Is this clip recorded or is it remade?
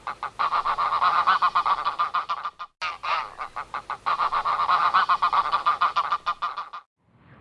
recorded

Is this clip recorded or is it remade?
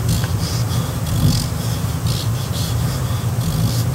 recorded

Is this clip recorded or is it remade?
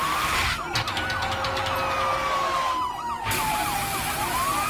recorded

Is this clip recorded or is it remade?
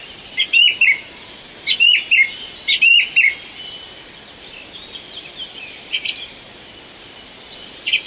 remade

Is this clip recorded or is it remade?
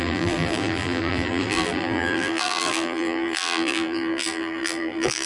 remade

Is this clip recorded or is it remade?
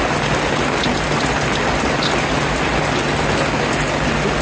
recorded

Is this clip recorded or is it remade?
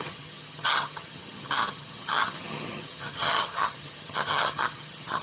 remade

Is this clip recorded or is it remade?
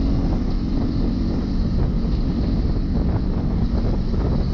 recorded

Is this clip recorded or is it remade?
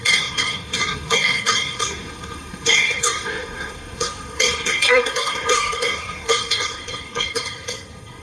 remade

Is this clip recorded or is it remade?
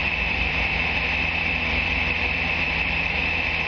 remade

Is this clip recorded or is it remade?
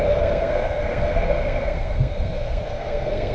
remade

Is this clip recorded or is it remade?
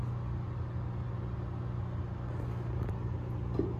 recorded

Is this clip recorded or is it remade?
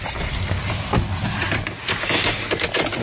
recorded